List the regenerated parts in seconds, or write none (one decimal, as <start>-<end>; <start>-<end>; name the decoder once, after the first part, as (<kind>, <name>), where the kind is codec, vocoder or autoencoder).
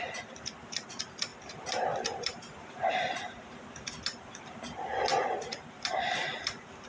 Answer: 1.3-4.5 (vocoder, BigVGAN v2); 5.1-6.3